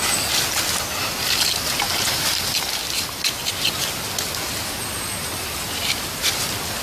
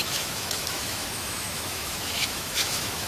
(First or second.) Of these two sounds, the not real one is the second